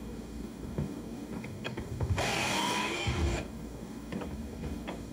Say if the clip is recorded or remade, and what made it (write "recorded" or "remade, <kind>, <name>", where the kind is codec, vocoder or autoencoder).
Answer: remade, codec, DAC